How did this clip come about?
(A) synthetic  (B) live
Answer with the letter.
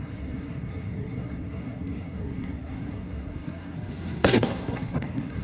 A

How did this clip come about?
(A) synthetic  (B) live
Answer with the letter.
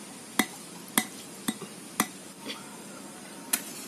B